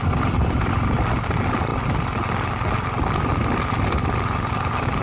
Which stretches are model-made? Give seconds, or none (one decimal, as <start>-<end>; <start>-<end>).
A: none